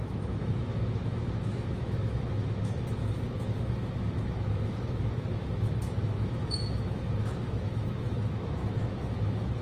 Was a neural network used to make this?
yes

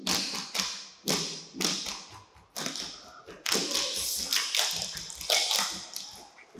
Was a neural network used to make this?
no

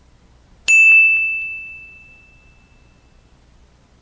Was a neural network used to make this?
no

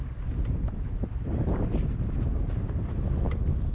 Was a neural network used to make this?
no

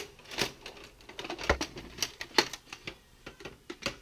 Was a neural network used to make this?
no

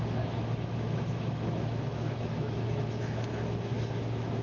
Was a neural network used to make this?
yes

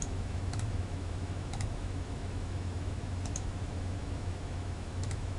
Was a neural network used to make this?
yes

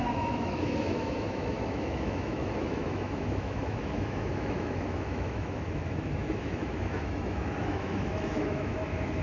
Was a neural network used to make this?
yes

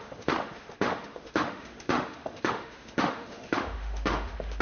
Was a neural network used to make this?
yes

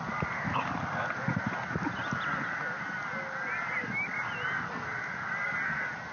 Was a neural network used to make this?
no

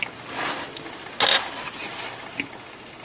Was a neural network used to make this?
no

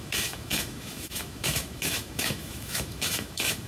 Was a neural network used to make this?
yes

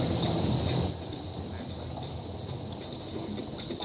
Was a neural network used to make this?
no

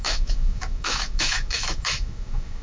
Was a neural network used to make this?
yes